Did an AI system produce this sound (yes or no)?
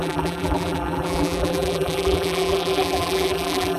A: yes